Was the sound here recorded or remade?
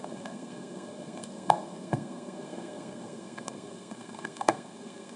remade